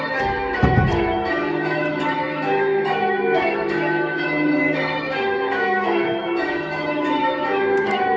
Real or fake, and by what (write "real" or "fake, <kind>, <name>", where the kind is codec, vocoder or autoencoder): fake, autoencoder, DAC-VAE